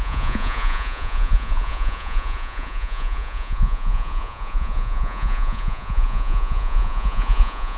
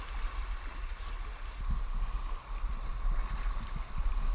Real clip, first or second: second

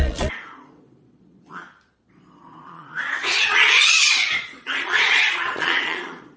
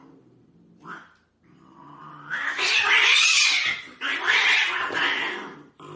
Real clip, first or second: second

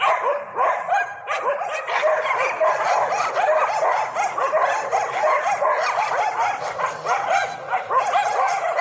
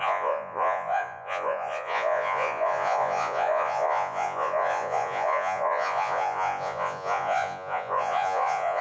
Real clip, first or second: first